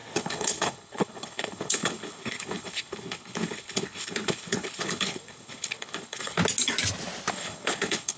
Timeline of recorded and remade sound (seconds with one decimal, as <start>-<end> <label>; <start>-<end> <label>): 0.0-6.4 remade; 6.4-7.3 recorded; 7.3-8.2 remade